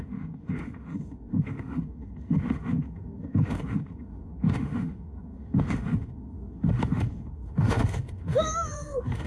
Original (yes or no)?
no